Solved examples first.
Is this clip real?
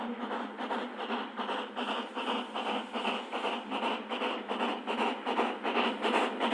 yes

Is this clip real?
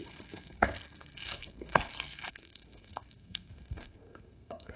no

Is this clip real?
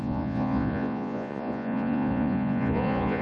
no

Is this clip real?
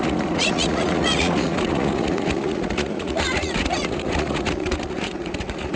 no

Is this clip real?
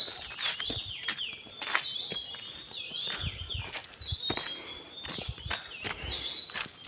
yes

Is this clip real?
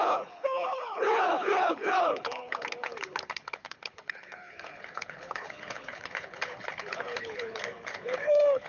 no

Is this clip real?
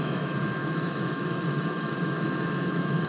no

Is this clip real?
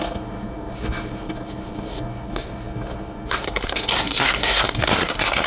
no